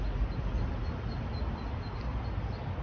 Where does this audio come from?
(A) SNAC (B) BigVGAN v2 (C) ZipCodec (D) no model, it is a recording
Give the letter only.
D